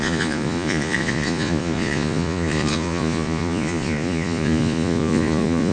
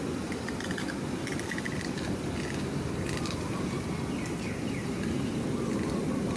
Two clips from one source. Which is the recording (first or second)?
second